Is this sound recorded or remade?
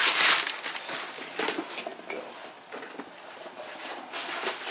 recorded